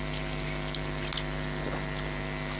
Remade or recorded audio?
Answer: recorded